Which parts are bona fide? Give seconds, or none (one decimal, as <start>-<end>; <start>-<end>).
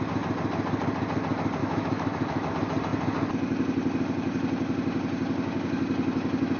0.0-1.6; 2.5-6.6